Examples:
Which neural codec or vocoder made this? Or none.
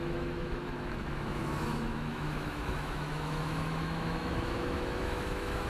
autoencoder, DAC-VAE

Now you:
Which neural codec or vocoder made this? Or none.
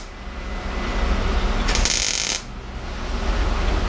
none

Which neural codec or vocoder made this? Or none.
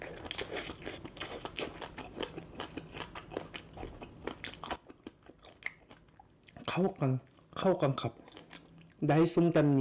none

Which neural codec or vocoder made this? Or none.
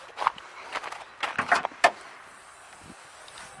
none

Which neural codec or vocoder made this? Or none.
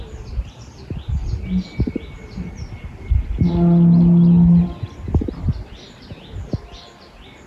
none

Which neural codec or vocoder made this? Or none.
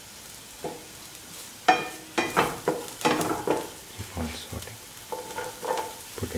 none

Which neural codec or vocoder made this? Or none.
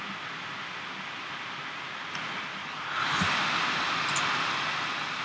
none